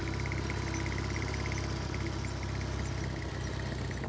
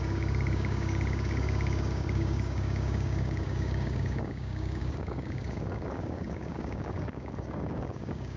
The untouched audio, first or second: first